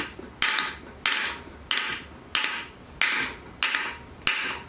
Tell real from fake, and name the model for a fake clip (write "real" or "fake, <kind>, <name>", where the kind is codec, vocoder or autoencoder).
real